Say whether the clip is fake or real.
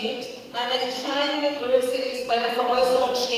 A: fake